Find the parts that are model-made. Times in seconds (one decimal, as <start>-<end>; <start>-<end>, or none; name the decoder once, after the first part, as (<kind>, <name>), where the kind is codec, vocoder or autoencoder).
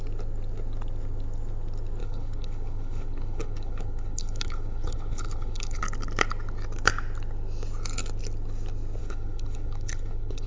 2.0-5.8 (codec, HILCodec); 9.0-10.5